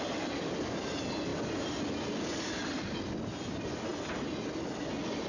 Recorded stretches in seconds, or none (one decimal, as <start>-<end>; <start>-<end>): 0.0-5.3